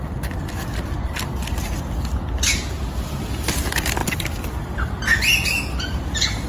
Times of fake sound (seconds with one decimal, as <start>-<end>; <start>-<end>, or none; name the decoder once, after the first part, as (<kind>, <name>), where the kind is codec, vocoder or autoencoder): none